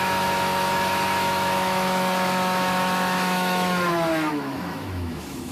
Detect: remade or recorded remade